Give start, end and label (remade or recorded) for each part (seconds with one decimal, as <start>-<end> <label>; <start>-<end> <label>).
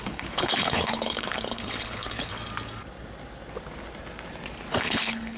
0.0-2.3 remade; 2.3-4.7 recorded; 4.7-5.4 remade